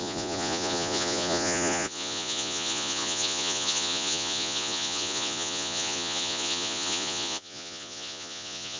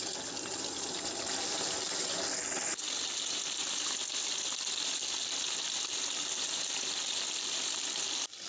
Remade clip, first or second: first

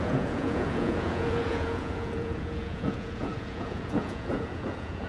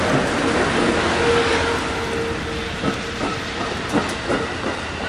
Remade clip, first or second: first